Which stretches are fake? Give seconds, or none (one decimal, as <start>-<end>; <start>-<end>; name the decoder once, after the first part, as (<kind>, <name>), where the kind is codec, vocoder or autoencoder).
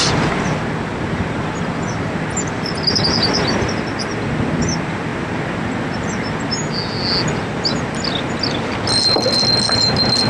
none